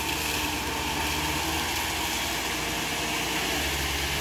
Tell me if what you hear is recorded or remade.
recorded